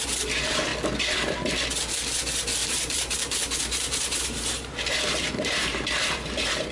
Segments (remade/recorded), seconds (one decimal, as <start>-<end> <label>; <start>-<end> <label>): 0.0-2.6 recorded; 2.6-6.7 remade